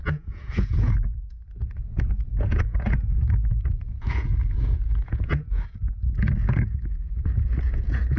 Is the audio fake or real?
fake